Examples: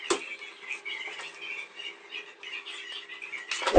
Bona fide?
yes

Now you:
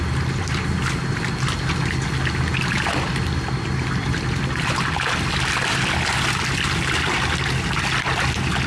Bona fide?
yes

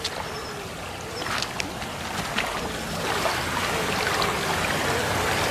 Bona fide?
yes